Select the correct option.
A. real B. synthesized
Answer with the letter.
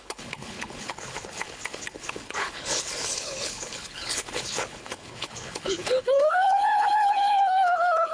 B